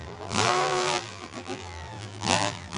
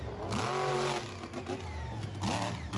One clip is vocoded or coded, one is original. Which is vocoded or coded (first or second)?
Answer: first